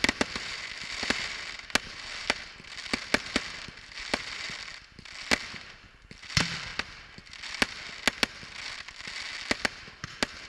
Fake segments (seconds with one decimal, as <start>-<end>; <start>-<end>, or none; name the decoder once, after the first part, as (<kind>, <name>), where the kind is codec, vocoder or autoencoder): none